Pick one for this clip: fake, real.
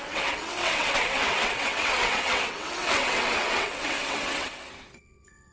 fake